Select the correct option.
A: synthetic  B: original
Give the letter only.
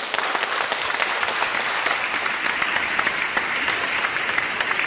B